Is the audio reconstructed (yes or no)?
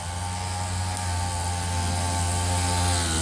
no